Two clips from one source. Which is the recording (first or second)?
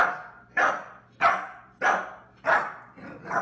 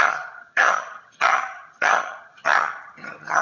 first